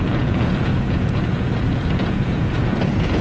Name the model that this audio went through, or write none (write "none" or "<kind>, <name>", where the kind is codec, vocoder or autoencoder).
vocoder, Vocos